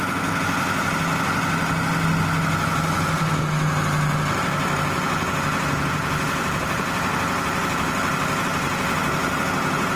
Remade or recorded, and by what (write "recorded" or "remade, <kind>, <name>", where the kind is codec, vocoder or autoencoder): recorded